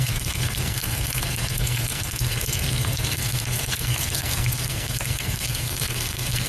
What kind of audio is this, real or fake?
fake